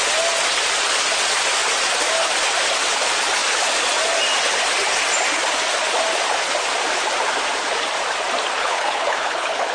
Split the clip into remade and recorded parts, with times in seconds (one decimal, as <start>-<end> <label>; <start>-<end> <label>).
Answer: 0.0-8.6 recorded; 8.6-9.7 remade